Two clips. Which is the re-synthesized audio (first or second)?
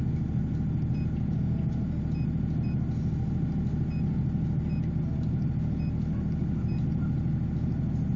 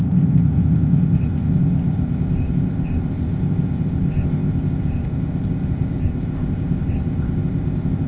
second